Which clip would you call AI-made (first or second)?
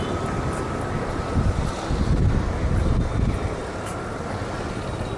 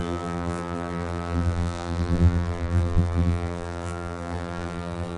second